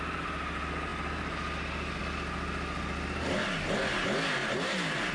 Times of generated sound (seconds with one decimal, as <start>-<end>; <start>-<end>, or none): 4.4-5.1